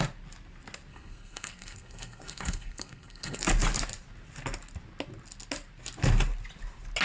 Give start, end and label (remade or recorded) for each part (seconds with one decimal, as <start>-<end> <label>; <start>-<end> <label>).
0.0-0.9 recorded; 0.9-3.4 remade; 3.4-7.0 recorded